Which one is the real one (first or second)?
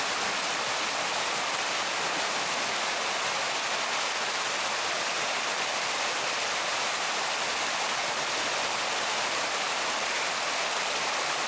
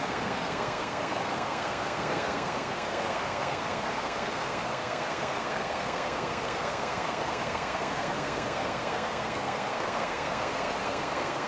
first